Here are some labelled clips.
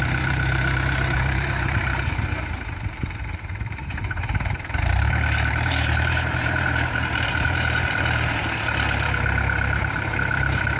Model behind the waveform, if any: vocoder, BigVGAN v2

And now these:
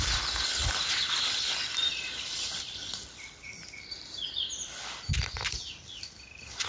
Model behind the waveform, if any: none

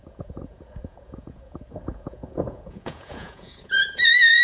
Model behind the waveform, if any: vocoder, Vocos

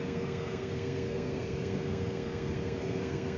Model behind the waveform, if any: codec, SNAC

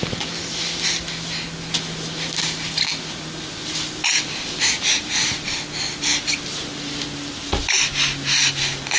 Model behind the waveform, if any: none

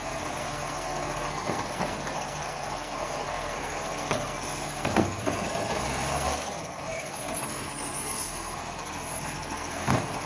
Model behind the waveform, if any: codec, SNAC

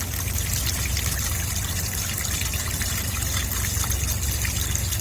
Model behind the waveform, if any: none